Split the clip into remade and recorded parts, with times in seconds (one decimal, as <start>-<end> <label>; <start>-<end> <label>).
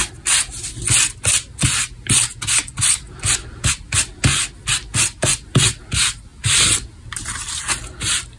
0.0-8.4 recorded